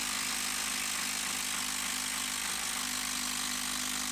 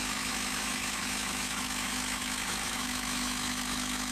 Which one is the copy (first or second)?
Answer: second